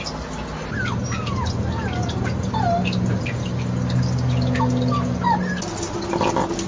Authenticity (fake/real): real